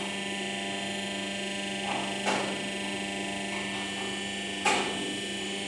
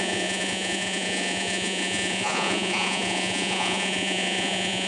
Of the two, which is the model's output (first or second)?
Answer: second